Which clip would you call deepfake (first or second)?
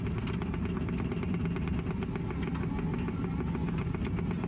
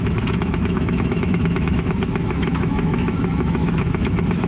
second